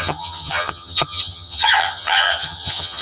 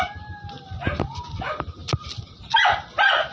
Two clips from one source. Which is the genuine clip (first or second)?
second